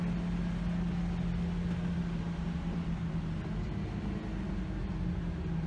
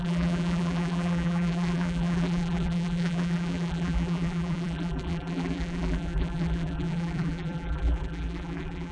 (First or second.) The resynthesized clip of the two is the second